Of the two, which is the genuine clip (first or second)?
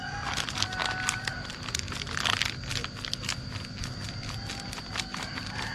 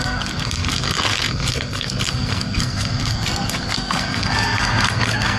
first